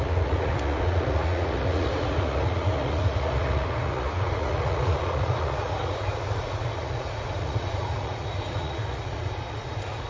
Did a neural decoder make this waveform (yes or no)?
yes